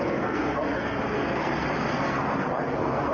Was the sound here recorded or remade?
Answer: remade